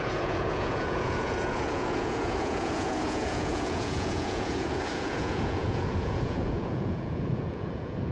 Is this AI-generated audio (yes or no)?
yes